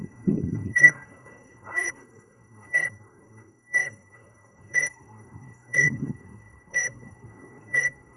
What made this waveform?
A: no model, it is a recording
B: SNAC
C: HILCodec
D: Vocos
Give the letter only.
B